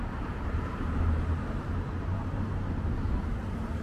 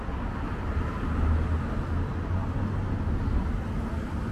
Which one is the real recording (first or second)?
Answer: second